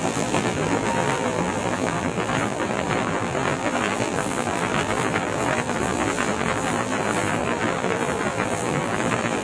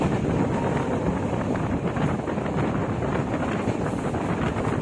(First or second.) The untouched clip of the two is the second